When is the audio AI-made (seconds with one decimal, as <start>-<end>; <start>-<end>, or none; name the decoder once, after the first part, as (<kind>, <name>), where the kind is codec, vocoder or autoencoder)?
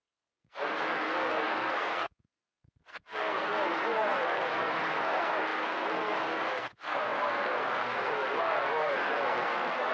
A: 0.0-9.9 (codec, SNAC)